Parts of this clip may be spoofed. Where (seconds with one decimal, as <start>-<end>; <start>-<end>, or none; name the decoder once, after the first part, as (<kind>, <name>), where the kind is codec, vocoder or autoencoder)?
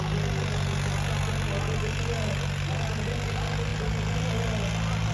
none